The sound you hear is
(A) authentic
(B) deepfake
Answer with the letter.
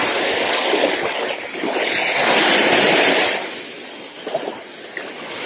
A